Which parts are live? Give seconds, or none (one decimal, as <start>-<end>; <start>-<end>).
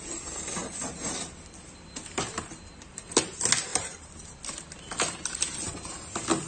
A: 0.0-3.7; 4.8-6.5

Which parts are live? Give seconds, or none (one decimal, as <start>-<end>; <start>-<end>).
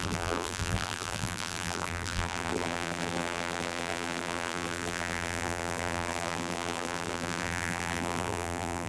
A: none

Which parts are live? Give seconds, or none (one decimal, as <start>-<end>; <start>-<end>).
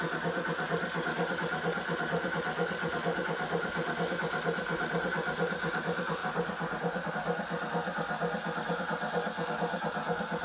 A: 0.0-10.4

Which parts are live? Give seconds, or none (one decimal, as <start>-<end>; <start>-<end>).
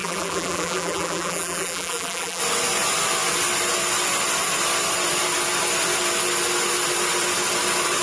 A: 2.4-8.0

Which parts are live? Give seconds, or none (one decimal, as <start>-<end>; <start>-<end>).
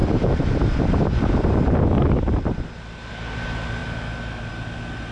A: 3.1-5.1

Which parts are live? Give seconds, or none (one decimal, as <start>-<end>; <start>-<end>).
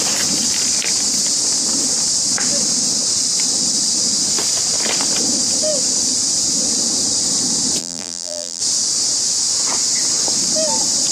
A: 0.0-7.8; 8.6-11.1